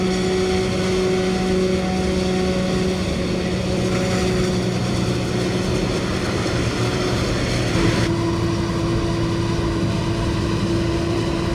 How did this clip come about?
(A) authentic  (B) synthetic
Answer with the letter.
A